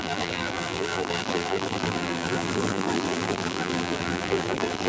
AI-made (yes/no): yes